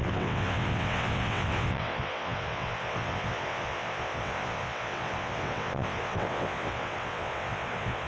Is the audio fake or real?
fake